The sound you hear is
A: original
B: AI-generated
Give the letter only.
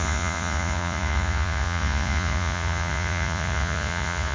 B